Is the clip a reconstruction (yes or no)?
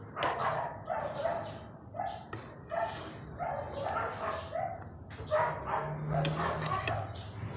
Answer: no